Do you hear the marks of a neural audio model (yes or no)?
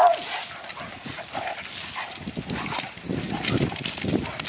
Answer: no